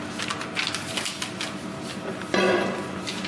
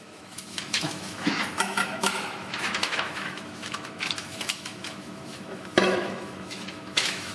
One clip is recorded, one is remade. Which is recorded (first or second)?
first